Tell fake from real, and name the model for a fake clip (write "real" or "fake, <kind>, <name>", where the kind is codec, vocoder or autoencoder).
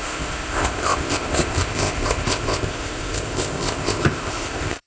fake, codec, ZipCodec